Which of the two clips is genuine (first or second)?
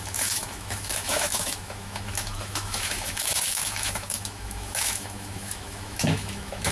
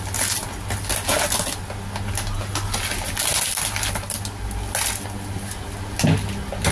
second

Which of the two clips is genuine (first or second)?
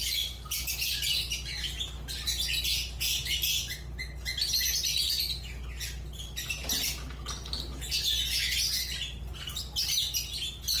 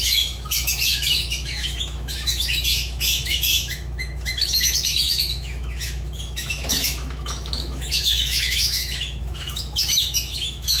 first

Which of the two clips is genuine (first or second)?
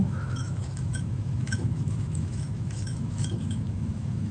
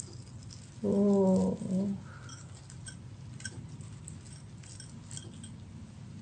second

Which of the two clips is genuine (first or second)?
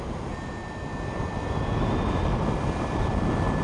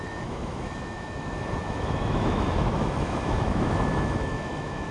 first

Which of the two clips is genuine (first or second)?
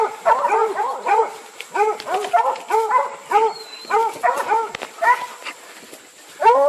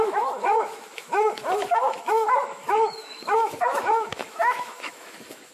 first